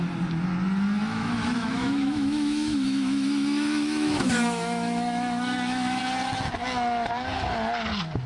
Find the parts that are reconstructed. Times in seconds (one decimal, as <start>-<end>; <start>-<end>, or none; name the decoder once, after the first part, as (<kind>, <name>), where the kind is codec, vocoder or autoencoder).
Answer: 1.0-6.0 (autoencoder, DAC-VAE)